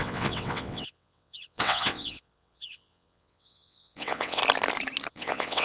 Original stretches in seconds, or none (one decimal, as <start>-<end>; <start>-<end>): 4.4-5.1